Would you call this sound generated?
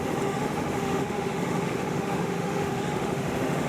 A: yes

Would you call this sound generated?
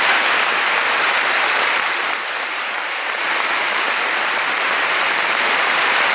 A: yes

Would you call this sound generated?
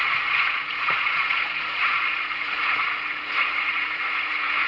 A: yes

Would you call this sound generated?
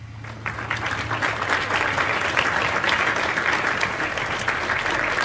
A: no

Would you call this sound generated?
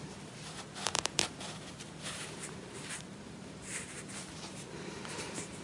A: yes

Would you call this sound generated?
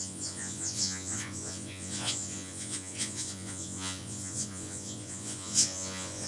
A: yes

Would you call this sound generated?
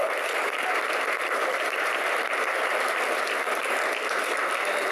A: yes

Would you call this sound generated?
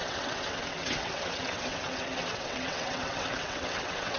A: yes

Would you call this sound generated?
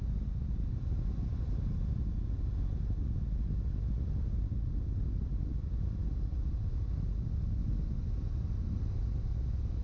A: no